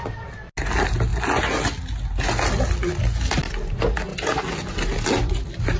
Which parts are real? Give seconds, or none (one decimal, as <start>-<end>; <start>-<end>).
0.0-5.8